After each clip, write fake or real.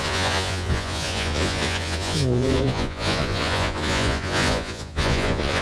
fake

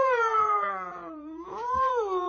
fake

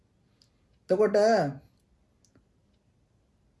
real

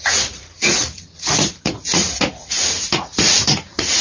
fake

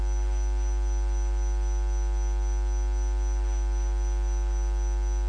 real